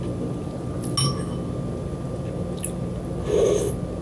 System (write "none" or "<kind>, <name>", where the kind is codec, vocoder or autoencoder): none